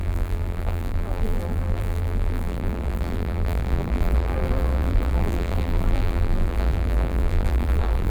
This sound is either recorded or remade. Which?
remade